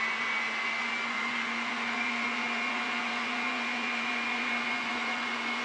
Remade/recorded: remade